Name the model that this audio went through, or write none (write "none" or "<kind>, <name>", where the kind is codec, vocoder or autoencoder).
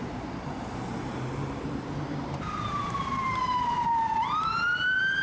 vocoder, BigVGAN v2